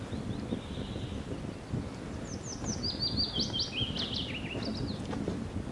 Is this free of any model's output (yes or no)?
yes